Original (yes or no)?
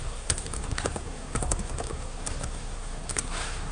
no